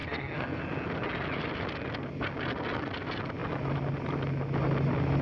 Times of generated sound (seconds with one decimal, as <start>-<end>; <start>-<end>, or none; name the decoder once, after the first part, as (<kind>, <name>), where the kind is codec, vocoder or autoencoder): 0.0-0.6 (codec, SNAC)